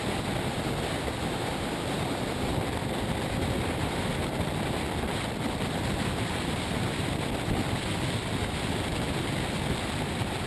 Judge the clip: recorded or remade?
remade